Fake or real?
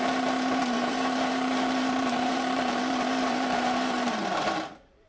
fake